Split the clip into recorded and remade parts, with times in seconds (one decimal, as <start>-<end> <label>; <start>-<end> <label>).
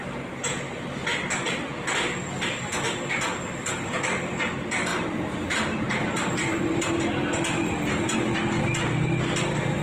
0.0-9.8 recorded